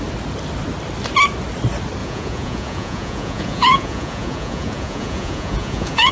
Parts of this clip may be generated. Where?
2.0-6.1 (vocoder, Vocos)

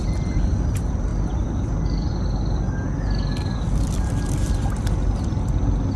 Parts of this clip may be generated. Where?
none